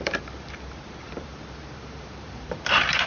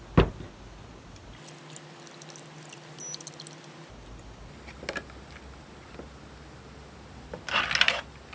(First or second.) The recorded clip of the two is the second